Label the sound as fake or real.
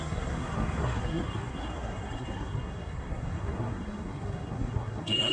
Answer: fake